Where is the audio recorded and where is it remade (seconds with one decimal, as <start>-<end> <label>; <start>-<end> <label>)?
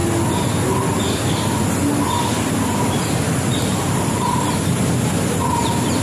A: 0.0-1.0 recorded; 1.0-6.0 remade